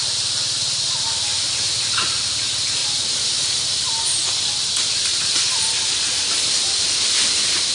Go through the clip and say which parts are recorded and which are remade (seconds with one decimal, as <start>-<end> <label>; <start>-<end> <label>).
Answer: 0.0-7.7 recorded

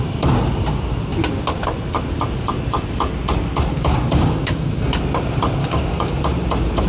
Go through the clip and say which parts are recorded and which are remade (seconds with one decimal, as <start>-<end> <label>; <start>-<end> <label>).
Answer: 0.0-3.7 recorded; 3.7-5.0 remade; 5.0-5.6 recorded; 5.6-6.2 remade; 6.2-6.9 recorded